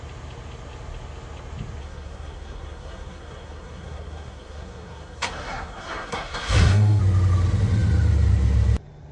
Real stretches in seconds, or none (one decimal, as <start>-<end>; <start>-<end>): 0.0-1.8; 7.0-9.1

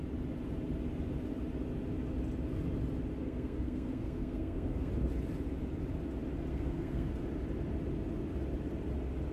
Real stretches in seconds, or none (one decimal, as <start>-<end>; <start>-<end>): 0.0-3.2; 4.9-6.5; 7.2-9.3

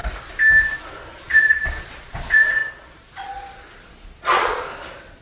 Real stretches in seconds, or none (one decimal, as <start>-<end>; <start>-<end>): 0.0-0.8

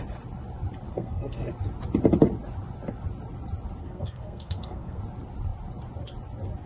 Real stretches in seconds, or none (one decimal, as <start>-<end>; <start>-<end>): 0.0-0.9; 1.5-3.8; 5.0-6.7

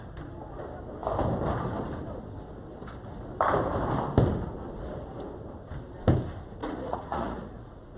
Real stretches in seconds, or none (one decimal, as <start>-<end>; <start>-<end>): 0.0-6.6

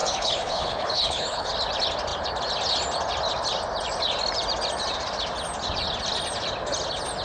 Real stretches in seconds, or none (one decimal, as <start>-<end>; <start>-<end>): 1.5-7.2

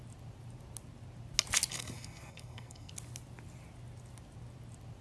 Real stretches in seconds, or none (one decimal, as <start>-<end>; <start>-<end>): 0.0-1.7; 2.9-5.0

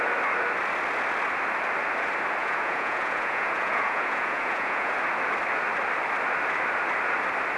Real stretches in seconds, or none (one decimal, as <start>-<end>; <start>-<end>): 0.0-2.4; 4.9-7.6